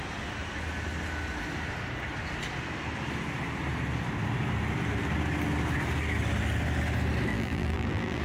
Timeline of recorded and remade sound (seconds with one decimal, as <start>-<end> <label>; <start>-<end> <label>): 0.0-7.3 recorded; 7.3-8.2 remade